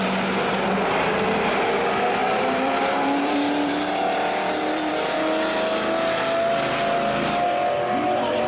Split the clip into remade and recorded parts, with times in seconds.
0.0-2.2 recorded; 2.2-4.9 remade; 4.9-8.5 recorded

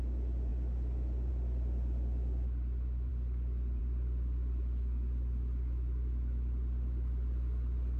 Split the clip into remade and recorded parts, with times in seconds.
0.0-8.0 recorded

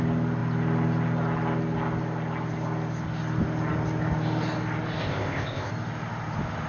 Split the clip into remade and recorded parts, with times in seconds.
0.0-5.0 recorded; 5.0-5.7 remade; 5.7-6.7 recorded

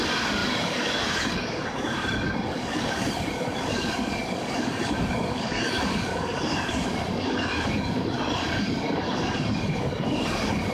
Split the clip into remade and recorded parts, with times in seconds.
0.0-10.7 remade

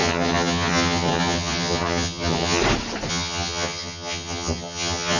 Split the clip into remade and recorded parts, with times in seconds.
0.0-2.6 remade; 2.6-3.1 recorded; 3.1-5.2 remade

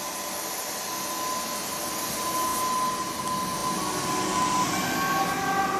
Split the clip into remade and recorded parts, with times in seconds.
0.0-5.8 recorded

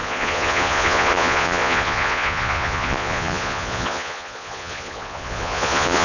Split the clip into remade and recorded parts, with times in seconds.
0.0-6.0 remade